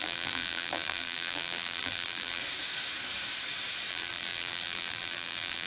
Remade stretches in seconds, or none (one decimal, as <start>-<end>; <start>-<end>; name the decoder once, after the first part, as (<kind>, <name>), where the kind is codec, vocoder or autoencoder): 0.0-2.4 (vocoder, BigVGAN v2); 3.9-5.7